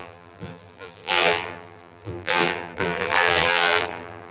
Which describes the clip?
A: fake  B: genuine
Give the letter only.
A